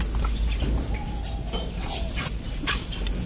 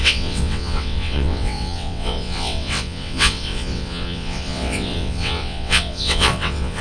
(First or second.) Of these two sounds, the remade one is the second